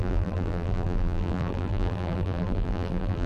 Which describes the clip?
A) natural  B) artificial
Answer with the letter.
B